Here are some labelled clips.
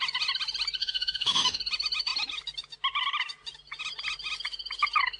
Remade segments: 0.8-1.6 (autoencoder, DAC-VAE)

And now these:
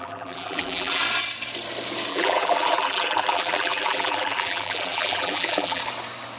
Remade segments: 0.0-1.0 (vocoder, BigVGAN v2); 2.1-5.8

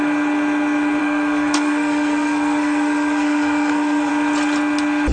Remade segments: 1.0-4.1 (codec, SNAC)

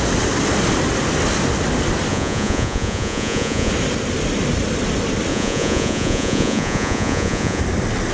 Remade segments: 2.1-3.7 (vocoder, Vocos); 5.3-7.6

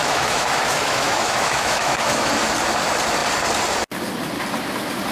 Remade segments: 0.0-2.3 (autoencoder, DAC-VAE)

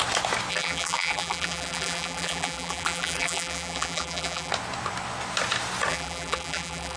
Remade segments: 0.5-4.5 (vocoder, BigVGAN v2); 5.9-7.0

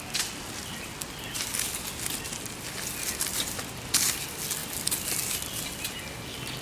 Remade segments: none

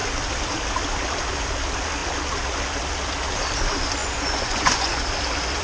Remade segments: 4.0-5.0 (vocoder, Vocos)